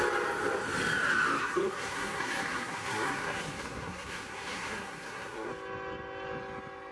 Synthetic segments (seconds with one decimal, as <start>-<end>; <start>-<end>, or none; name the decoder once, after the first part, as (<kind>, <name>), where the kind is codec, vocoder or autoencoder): 1.4-5.5 (codec, SNAC)